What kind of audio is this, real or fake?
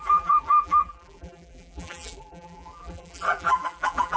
fake